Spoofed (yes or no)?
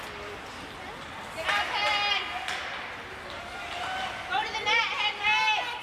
no